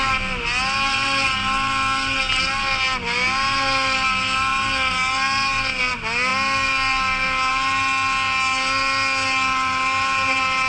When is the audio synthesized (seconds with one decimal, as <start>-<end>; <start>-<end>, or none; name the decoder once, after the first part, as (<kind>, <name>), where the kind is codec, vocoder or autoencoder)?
none